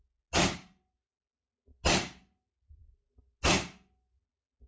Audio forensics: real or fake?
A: real